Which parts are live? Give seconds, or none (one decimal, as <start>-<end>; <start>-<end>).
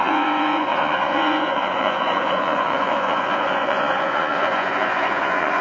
none